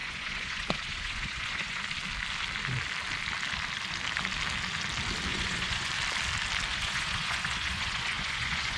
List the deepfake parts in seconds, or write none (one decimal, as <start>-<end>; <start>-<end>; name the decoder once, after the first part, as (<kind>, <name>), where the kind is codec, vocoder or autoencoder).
0.0-1.8 (vocoder, Vocos); 5.3-5.9; 6.7-8.8